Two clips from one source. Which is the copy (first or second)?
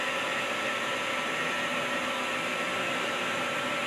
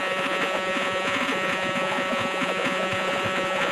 second